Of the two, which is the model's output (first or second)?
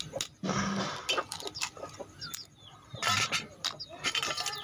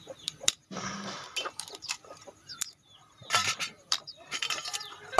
second